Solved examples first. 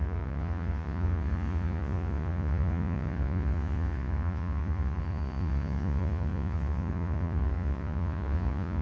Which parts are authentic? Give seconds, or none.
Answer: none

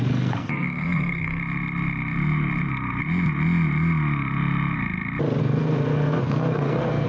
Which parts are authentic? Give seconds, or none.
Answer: 1.4-5.4

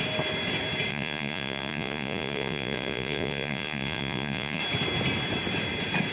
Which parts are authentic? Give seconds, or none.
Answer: 0.0-0.9; 4.6-6.1